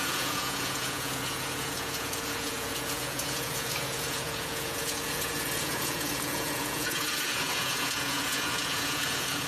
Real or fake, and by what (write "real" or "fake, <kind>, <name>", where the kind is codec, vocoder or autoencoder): fake, vocoder, Vocos